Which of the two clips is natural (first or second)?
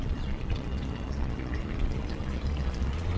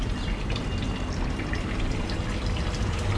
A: second